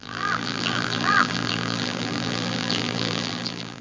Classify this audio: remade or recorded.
remade